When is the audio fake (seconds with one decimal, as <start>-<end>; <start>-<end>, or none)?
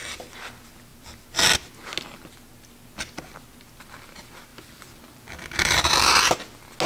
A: 4.5-6.2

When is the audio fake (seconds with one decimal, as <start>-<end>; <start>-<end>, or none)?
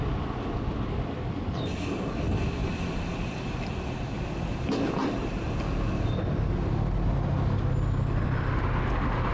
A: 2.6-5.3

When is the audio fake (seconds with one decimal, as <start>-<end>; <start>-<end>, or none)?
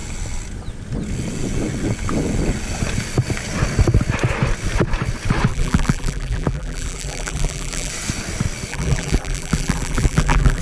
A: 5.5-7.9; 8.7-10.6